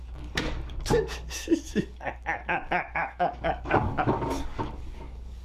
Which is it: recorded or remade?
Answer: remade